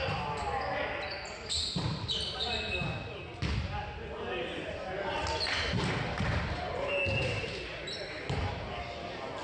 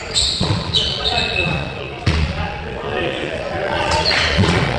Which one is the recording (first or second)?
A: first